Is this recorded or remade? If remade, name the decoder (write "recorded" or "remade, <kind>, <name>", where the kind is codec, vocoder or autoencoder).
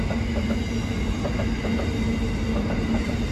recorded